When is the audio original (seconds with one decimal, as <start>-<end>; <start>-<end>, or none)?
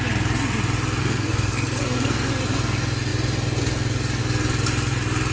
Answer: 0.0-1.0; 2.3-5.3